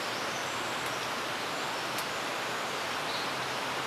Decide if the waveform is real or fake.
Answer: real